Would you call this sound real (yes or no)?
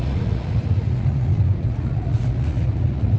no